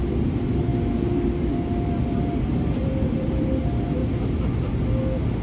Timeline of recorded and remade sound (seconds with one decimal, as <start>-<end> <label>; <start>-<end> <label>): 0.0-2.8 recorded; 2.8-3.5 remade; 3.5-4.0 recorded; 4.0-4.7 remade; 4.7-5.4 recorded